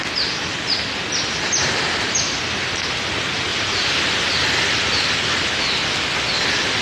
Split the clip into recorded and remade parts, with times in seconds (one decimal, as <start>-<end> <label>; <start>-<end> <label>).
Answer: 0.0-3.5 recorded; 3.5-4.2 remade; 4.2-6.8 recorded